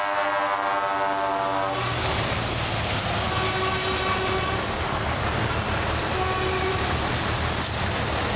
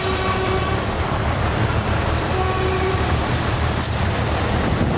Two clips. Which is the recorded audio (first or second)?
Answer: first